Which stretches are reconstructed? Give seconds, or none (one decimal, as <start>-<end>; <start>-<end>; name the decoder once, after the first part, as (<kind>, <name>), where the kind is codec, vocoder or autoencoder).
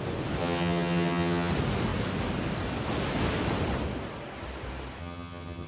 0.4-1.5 (vocoder, HiFi-GAN); 5.0-5.7